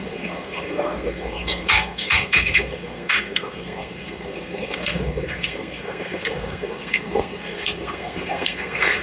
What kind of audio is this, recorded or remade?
remade